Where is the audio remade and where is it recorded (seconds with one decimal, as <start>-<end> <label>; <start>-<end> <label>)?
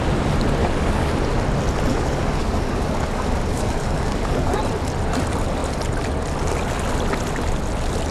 0.0-0.6 recorded; 0.6-1.1 remade; 1.1-1.9 recorded; 1.9-4.6 remade; 4.6-8.1 recorded